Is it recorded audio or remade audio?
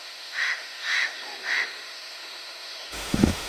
remade